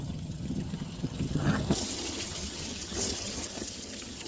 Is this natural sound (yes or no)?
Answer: no